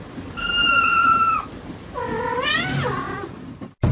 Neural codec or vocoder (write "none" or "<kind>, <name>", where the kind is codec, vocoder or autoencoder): none